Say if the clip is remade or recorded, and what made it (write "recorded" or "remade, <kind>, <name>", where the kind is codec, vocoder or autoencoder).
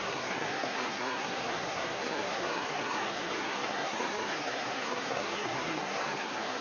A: remade, codec, SNAC